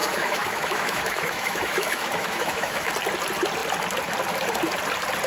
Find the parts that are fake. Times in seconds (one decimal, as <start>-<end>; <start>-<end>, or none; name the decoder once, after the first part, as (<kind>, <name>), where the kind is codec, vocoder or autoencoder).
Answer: 0.0-2.9 (autoencoder, DAC-VAE)